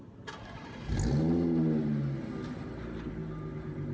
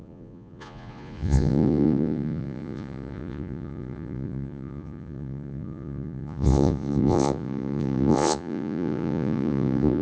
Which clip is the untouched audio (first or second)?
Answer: first